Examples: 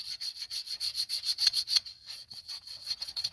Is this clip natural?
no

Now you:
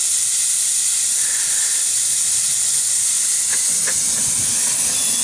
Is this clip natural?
yes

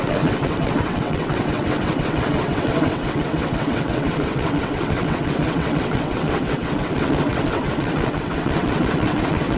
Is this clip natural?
no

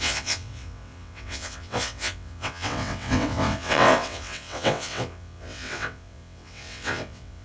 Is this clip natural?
no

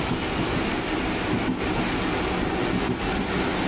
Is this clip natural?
yes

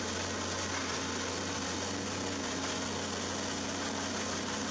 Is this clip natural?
yes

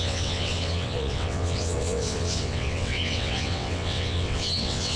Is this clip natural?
no